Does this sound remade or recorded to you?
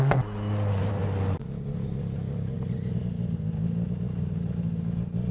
recorded